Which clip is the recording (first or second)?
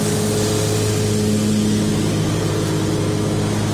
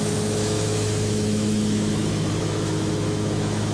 first